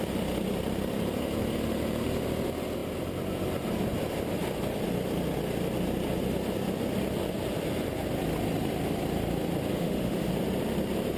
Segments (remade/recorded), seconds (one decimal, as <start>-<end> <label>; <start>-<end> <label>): 0.0-9.7 recorded; 9.7-10.3 remade; 10.3-11.2 recorded